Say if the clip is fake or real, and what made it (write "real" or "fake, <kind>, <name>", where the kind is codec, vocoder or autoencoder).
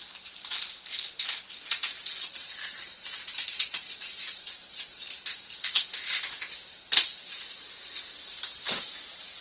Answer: fake, vocoder, BigVGAN v2